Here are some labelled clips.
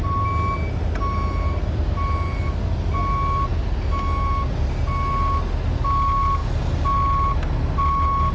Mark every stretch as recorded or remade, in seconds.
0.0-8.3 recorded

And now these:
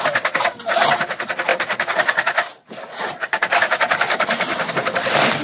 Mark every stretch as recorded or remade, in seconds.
0.0-1.5 recorded; 1.5-4.7 remade; 4.7-5.4 recorded